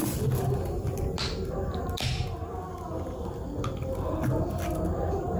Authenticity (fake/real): real